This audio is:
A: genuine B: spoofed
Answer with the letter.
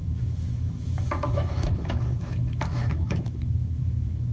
B